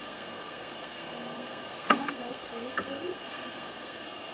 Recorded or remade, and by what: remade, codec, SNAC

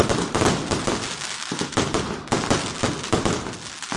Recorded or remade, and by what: recorded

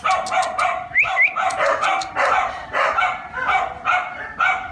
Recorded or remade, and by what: recorded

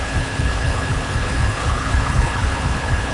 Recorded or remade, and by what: remade, codec, HILCodec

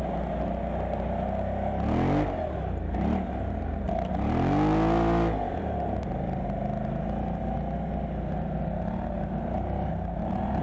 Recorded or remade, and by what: recorded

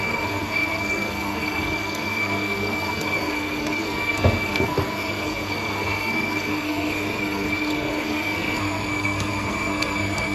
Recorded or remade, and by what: remade, codec, SNAC